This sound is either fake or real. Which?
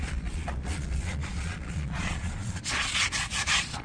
fake